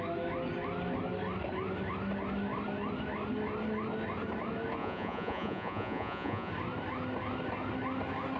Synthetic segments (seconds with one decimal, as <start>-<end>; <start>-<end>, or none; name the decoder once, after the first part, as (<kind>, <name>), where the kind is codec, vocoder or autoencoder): 4.8-6.5 (vocoder, Vocos)